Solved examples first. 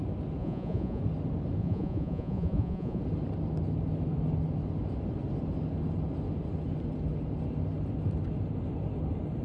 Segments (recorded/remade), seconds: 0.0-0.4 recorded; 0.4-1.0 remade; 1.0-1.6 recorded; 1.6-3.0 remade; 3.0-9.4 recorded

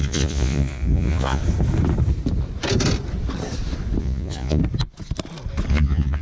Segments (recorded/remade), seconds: 0.0-1.4 remade; 1.4-4.0 recorded; 4.0-4.6 remade; 4.6-5.7 recorded; 5.7-6.2 remade

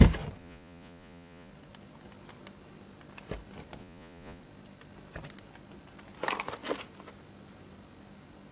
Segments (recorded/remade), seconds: 0.0-0.4 recorded; 0.4-1.5 remade; 1.5-3.8 recorded; 3.8-4.4 remade; 4.4-8.5 recorded

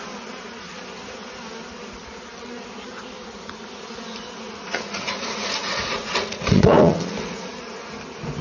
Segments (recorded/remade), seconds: 0.0-4.1 recorded; 4.1-7.9 remade; 7.9-8.4 recorded

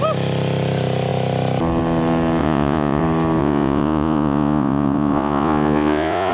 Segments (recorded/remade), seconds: 0.0-2.4 recorded; 2.4-3.0 remade; 3.0-3.4 recorded; 3.4-6.3 remade

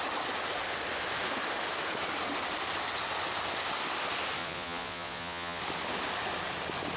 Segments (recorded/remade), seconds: 0.0-4.4 recorded; 4.4-5.6 remade; 5.6-7.0 recorded

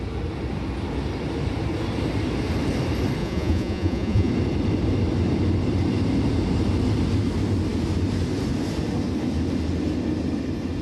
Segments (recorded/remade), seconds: 0.0-3.2 recorded; 3.2-4.3 remade; 4.3-10.8 recorded

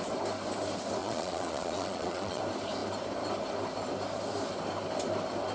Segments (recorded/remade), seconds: 0.0-1.0 recorded; 1.0-2.4 remade; 2.4-5.5 recorded